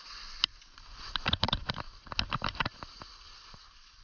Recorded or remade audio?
recorded